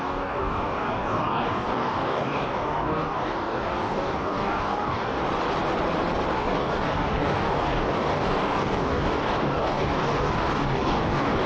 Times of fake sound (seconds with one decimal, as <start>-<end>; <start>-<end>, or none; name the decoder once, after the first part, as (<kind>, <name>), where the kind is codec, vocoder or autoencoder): 0.0-5.2 (codec, DAC); 6.3-11.5